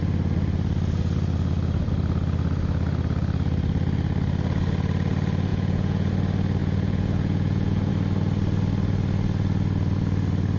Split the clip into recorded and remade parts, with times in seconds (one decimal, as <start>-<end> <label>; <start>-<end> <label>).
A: 0.0-5.5 recorded; 5.5-6.1 remade; 6.1-6.6 recorded; 6.6-7.9 remade; 7.9-10.6 recorded